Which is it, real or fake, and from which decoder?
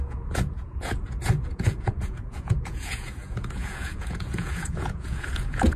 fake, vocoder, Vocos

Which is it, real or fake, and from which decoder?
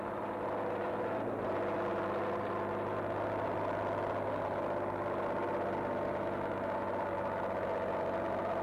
real